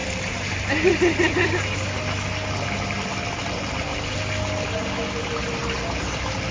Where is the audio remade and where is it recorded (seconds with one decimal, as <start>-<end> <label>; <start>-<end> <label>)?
0.0-5.6 recorded; 5.6-6.5 remade